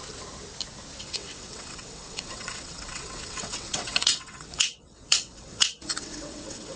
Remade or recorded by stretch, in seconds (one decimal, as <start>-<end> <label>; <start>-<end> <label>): 0.0-1.0 recorded; 1.0-6.8 remade